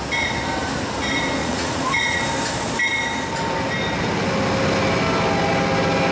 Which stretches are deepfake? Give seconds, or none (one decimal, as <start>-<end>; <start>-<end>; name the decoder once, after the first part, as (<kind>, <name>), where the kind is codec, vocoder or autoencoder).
1.4-2.2 (vocoder, Vocos)